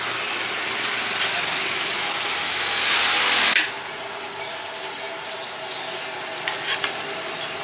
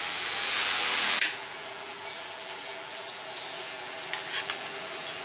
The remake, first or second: second